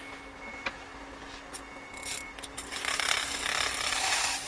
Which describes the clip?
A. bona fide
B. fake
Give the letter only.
A